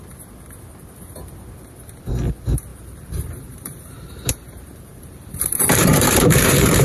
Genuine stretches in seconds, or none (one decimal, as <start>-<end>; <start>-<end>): 0.0-2.7

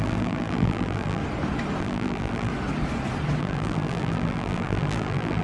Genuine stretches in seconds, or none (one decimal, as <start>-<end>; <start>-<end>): 1.2-1.8; 2.5-3.4

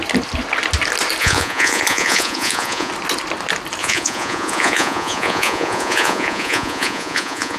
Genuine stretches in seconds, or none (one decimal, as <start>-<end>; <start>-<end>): 0.0-1.2; 2.9-3.8